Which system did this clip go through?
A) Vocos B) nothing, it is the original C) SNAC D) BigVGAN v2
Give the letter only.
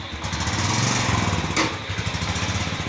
B